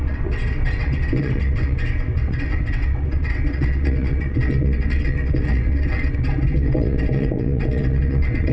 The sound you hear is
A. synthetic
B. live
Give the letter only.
A